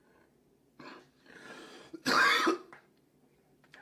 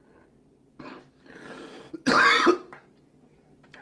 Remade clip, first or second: first